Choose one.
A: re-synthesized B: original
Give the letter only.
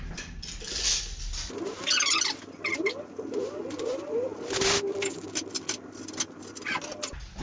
B